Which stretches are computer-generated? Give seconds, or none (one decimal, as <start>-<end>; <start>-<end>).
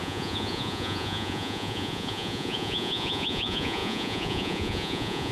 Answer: 0.0-5.3